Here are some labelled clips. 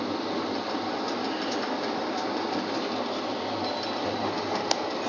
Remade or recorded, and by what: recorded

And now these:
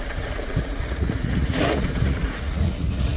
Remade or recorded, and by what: remade, vocoder, Vocos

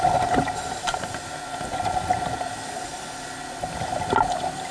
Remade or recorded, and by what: recorded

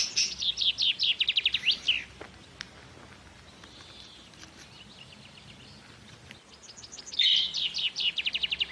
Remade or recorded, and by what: recorded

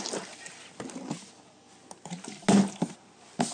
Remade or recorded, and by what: recorded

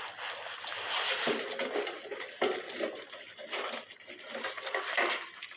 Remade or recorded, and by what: recorded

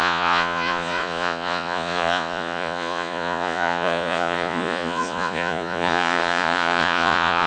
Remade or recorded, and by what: remade, vocoder, Vocos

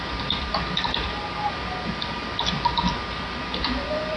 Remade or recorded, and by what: recorded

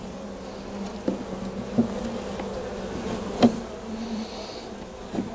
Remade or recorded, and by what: recorded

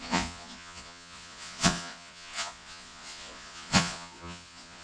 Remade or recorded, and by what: remade, vocoder, Vocos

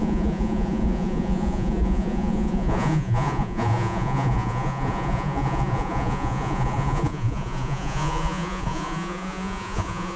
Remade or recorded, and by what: remade, vocoder, Vocos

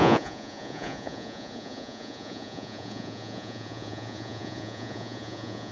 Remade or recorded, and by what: remade, vocoder, Vocos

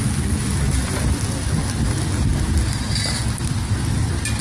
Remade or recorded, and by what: recorded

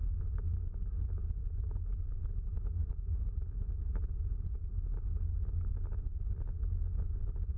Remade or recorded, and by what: recorded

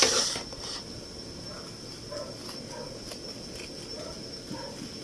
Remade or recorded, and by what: recorded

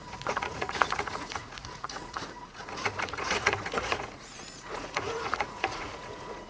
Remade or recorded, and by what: remade, vocoder, Vocos